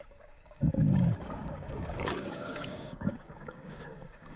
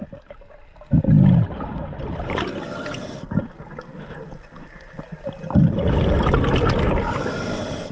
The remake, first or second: first